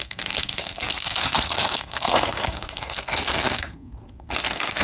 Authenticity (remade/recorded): remade